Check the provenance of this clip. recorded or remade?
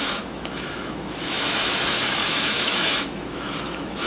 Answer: remade